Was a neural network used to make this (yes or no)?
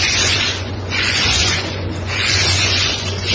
yes